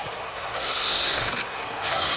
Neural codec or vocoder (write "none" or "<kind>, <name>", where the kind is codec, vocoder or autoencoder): codec, SNAC